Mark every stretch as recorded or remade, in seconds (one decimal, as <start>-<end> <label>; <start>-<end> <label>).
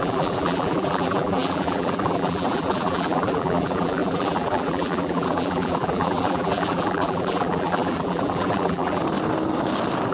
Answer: 0.0-9.0 remade; 9.0-10.1 recorded